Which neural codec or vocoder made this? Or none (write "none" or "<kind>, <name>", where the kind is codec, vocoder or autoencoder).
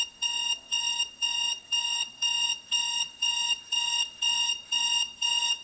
vocoder, WaveNeXt